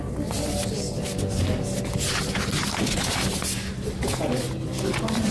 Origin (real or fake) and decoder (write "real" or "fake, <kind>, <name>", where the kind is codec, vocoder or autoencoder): real